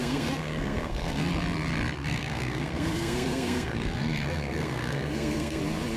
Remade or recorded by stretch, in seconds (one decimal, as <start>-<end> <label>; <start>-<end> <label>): 0.0-1.3 remade; 1.3-2.0 recorded; 2.0-5.6 remade; 5.6-6.0 recorded